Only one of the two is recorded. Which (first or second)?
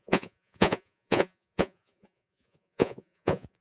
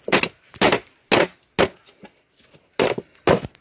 second